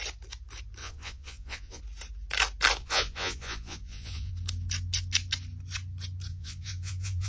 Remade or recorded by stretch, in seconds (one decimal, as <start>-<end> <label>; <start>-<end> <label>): 0.0-0.8 recorded; 0.8-1.8 remade; 1.8-2.8 recorded; 2.8-4.3 remade; 4.3-6.3 recorded; 6.3-7.3 remade